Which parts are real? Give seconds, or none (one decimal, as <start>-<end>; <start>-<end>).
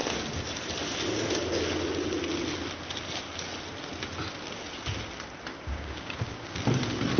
0.0-5.5; 6.6-7.2